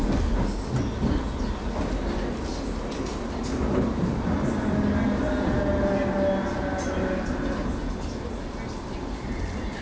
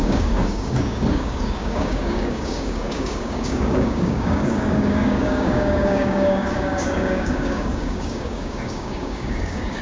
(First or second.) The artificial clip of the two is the second